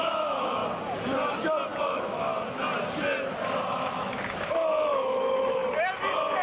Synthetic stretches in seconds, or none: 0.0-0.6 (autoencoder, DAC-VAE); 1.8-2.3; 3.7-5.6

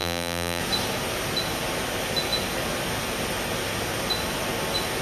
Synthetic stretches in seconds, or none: 0.0-0.6 (vocoder, BigVGAN v2)

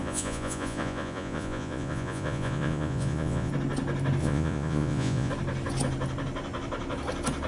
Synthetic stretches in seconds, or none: 0.0-3.5 (vocoder, Vocos); 4.2-5.3